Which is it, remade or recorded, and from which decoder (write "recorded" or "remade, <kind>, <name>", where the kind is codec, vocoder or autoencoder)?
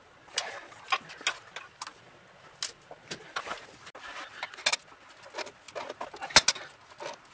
recorded